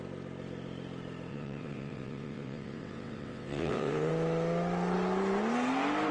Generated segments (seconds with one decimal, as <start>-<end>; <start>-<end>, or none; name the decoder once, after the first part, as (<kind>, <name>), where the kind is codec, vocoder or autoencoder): 1.3-4.1 (vocoder, WaveNeXt)